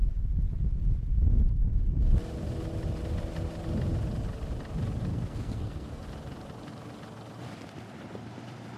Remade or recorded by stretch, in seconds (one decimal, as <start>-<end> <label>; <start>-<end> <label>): 0.0-5.1 recorded; 5.1-6.0 remade; 6.0-8.8 recorded